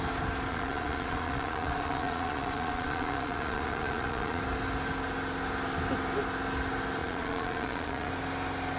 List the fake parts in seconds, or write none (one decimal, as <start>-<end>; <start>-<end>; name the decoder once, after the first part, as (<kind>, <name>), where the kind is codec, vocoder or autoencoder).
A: 0.5-4.4 (vocoder, Vocos); 7.0-8.1